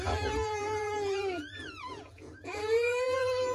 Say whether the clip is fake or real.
fake